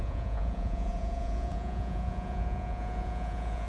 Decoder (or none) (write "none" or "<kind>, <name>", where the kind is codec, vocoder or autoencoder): vocoder, Vocos